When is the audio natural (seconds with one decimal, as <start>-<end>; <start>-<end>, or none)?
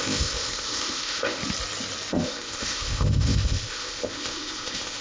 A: 1.4-2.1